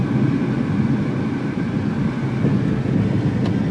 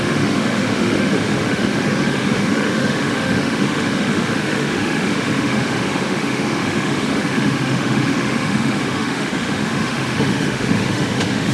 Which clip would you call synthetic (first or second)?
second